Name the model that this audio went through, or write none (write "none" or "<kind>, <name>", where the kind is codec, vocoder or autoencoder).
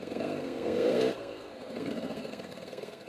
codec, SNAC